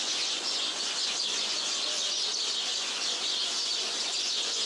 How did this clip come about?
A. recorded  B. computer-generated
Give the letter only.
B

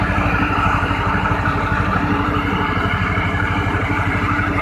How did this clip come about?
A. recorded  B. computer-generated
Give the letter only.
B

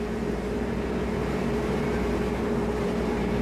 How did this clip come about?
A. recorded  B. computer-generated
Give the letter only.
B